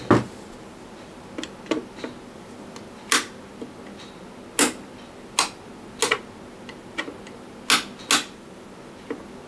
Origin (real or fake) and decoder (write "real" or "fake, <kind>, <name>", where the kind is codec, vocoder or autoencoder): real